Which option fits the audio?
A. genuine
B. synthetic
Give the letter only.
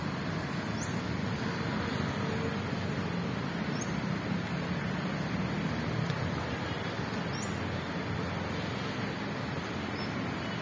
A